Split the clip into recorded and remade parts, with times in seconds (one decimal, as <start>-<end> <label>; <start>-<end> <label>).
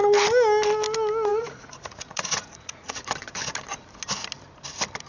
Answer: 0.0-1.3 recorded; 1.3-3.0 remade; 3.0-5.1 recorded